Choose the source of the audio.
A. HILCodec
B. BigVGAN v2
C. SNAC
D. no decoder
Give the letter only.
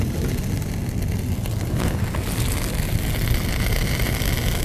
D